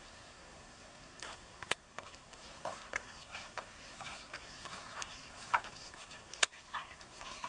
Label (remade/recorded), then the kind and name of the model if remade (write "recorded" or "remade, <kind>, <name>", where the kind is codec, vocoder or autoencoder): remade, codec, SNAC